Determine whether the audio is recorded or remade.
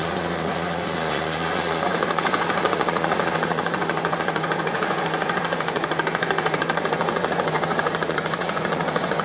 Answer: remade